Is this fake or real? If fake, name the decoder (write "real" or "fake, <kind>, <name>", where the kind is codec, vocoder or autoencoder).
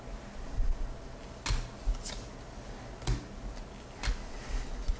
real